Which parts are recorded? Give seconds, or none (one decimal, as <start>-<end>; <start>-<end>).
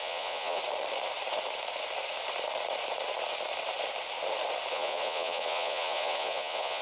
0.6-4.7